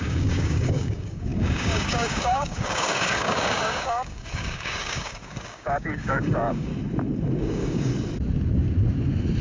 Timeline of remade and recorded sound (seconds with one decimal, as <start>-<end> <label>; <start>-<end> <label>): 0.0-6.7 remade; 6.7-7.4 recorded; 7.4-7.9 remade; 7.9-9.4 recorded